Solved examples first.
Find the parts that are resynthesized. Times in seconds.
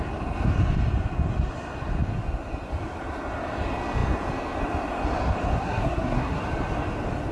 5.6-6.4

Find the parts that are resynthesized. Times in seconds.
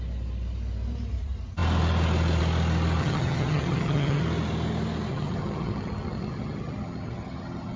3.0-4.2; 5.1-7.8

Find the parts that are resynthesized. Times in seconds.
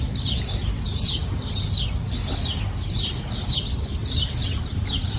4.0-5.2